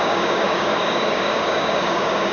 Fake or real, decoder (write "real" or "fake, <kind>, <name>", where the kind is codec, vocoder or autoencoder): fake, codec, DAC